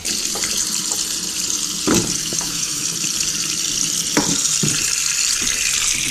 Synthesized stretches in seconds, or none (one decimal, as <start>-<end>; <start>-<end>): 2.2-2.8